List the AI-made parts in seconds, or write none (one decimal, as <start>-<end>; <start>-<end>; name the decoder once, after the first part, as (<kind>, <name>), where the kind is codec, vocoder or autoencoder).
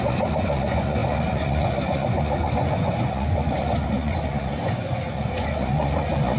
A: 0.0-6.4 (vocoder, Vocos)